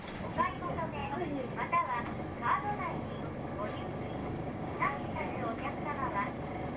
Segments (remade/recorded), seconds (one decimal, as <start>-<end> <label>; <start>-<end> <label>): 0.0-4.2 recorded; 4.2-5.7 remade; 5.7-6.8 recorded